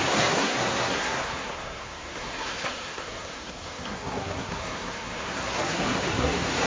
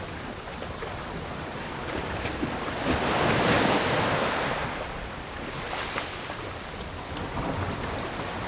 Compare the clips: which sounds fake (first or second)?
first